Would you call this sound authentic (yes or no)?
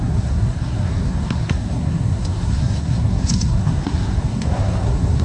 no